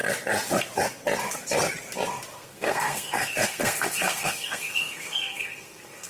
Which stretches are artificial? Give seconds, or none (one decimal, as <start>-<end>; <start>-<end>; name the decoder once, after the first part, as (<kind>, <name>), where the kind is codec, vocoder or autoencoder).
2.3-6.1 (codec, SNAC)